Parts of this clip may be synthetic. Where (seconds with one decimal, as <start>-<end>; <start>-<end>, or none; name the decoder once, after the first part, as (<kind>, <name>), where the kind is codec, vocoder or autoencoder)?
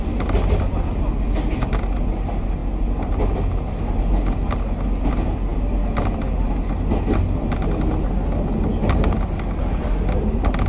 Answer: none